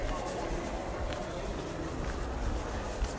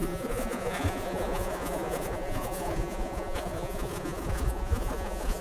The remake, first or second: second